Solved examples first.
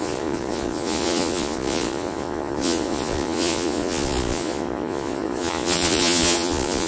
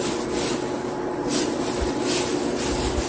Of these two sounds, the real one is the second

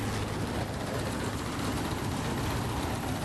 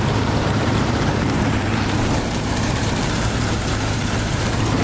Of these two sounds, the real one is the first